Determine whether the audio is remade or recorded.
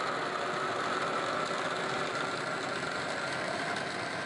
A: recorded